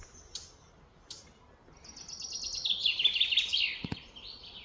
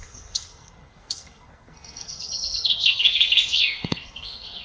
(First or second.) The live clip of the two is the first